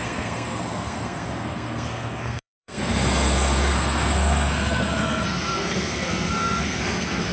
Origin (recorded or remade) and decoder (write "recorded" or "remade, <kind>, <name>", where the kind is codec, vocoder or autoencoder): remade, codec, SNAC